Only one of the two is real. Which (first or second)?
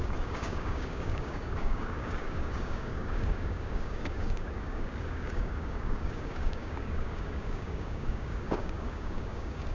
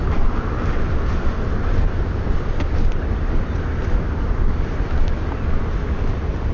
second